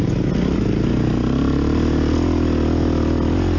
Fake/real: real